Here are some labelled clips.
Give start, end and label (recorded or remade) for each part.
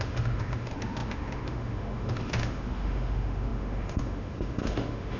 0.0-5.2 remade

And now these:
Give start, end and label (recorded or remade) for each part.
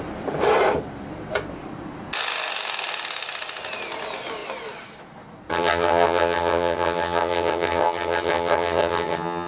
0.0-5.5 recorded; 5.5-9.5 remade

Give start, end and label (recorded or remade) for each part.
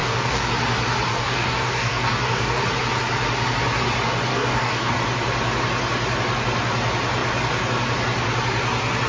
0.0-0.5 remade; 0.5-1.1 recorded; 1.1-2.6 remade; 2.6-4.3 recorded; 4.3-4.9 remade; 4.9-9.1 recorded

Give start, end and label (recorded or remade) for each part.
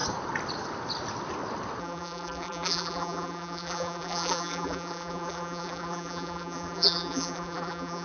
0.0-1.8 recorded; 1.8-8.0 remade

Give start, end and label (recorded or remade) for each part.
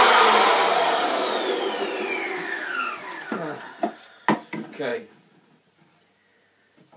0.0-4.9 recorded; 4.9-5.7 remade; 5.7-7.0 recorded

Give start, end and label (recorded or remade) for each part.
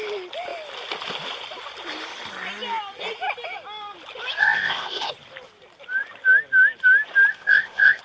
0.0-4.4 recorded; 4.4-5.1 remade; 5.1-7.3 recorded; 7.3-8.0 remade